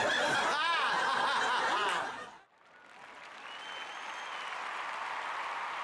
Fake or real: real